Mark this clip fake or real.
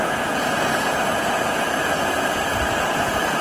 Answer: fake